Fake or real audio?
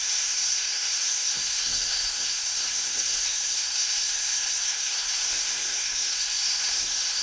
fake